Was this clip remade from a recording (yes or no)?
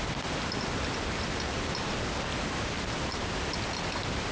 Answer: no